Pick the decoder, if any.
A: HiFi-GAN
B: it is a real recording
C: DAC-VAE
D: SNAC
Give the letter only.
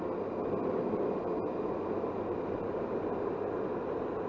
B